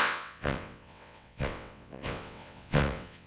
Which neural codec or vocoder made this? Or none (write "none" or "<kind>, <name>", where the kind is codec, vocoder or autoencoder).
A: vocoder, WaveNeXt